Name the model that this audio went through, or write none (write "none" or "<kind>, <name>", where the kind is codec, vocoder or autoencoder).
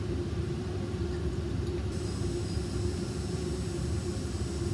none